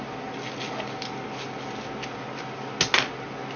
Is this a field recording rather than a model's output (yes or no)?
yes